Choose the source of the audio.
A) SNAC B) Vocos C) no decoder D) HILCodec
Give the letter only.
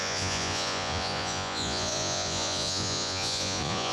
B